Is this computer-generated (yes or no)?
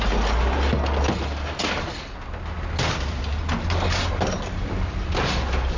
no